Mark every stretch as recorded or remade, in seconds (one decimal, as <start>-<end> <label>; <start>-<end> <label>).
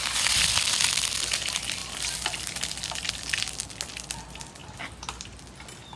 0.0-6.0 recorded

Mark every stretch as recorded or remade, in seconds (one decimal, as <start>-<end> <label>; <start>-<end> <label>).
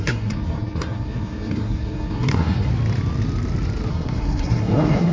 0.0-2.7 remade; 2.7-3.9 recorded; 3.9-5.1 remade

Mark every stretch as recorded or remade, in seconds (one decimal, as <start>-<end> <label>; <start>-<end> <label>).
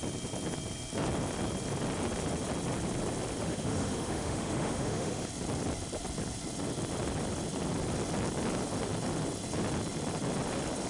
0.0-3.4 recorded; 3.4-5.3 remade; 5.3-10.9 recorded